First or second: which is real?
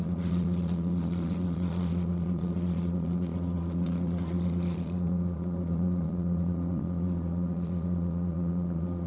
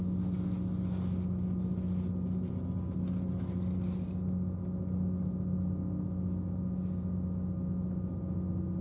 second